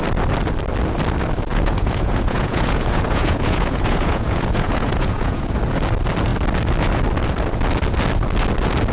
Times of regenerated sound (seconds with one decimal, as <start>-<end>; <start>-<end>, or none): 1.5-5.6